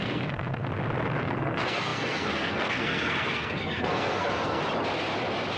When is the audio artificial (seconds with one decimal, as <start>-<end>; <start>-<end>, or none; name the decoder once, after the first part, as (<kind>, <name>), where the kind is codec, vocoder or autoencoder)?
0.0-0.7 (codec, SNAC); 1.2-4.6